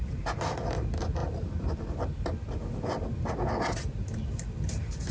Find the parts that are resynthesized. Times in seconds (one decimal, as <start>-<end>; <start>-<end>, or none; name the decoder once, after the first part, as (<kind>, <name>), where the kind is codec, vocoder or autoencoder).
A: none